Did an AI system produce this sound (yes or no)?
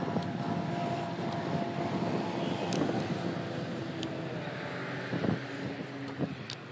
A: no